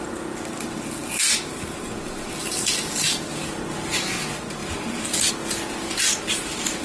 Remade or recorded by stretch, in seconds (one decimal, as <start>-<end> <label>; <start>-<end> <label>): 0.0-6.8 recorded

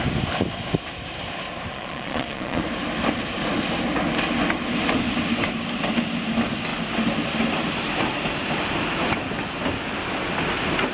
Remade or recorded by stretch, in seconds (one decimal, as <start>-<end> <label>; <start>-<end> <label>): 0.0-1.7 recorded; 1.7-2.6 remade; 2.6-10.9 recorded

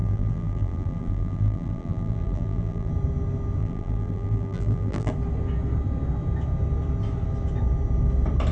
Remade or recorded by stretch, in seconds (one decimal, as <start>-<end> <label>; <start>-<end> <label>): 0.0-2.9 remade; 2.9-3.6 recorded; 3.6-5.1 remade; 5.1-8.5 recorded

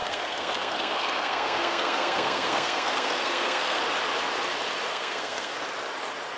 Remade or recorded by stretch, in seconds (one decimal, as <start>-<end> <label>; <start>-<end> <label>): 0.0-3.8 remade; 3.8-4.9 recorded; 4.9-5.5 remade; 5.5-6.4 recorded

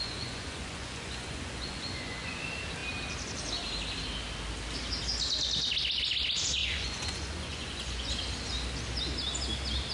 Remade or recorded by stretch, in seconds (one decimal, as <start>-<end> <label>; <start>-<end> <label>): 0.0-2.4 remade; 2.4-6.6 recorded; 6.6-8.1 remade; 8.1-9.9 recorded

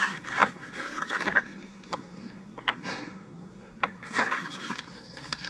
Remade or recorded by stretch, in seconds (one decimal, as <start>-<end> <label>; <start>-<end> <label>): 0.0-5.5 remade

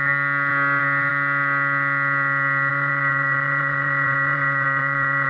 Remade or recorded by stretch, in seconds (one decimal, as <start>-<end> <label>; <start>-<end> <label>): 0.0-0.5 recorded; 0.5-1.1 remade; 1.1-2.7 recorded; 2.7-5.3 remade